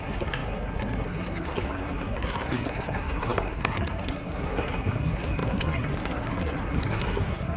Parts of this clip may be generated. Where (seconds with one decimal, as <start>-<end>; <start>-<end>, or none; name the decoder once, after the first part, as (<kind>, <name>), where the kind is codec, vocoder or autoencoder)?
0.0-7.6 (codec, SNAC)